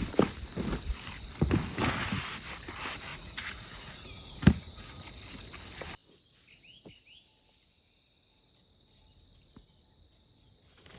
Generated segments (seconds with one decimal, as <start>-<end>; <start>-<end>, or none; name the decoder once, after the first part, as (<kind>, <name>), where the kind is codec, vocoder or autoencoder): 3.1-5.1 (vocoder, Vocos)